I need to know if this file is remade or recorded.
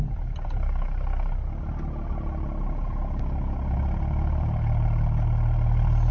recorded